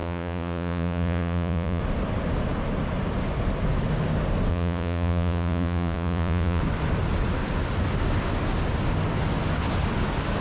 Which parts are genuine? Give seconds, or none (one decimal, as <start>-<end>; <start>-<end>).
1.8-4.5; 6.6-10.4